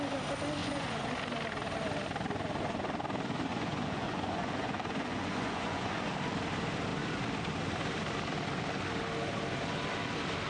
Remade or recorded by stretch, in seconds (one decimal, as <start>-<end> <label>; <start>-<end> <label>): 0.0-0.6 recorded; 0.6-1.1 remade; 1.1-3.5 recorded; 3.5-6.1 remade; 6.1-10.5 recorded